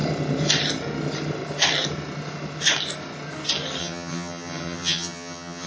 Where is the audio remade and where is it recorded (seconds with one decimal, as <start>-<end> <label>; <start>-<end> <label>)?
0.0-3.8 recorded; 3.8-5.7 remade